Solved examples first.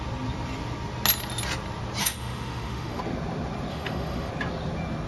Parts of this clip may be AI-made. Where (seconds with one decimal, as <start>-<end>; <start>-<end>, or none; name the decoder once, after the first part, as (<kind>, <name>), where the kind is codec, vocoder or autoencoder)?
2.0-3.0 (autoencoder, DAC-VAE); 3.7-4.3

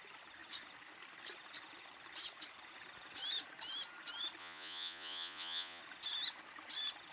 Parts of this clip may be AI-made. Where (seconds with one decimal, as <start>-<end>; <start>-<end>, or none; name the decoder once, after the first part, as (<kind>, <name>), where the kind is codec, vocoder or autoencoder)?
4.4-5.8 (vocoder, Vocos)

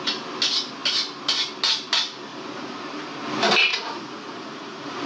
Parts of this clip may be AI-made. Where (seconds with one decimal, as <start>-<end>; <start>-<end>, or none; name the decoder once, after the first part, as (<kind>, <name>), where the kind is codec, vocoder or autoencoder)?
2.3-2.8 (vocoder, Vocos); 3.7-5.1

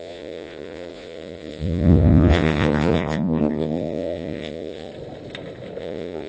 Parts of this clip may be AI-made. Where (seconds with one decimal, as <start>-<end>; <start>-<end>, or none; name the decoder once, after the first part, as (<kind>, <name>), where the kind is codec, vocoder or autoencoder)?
0.0-4.9 (vocoder, Vocos); 5.8-6.3

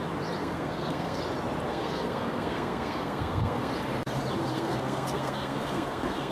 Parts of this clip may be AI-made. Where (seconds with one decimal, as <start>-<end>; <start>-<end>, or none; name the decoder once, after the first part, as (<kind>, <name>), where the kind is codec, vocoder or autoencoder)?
0.4-1.2 (codec, SNAC); 1.7-3.7; 4.5-6.3

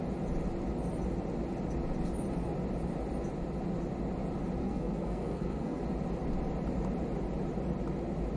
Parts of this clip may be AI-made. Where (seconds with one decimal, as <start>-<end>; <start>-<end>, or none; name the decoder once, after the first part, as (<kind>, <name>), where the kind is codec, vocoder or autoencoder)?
4.6-5.8 (codec, SNAC)